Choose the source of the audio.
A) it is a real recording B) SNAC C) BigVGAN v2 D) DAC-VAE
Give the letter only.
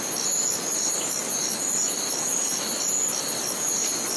A